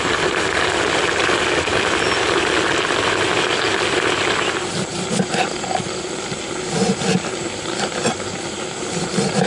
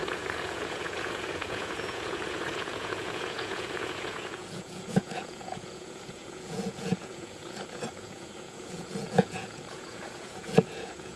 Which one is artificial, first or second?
second